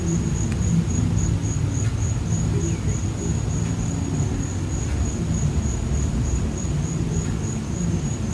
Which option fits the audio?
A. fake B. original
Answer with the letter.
B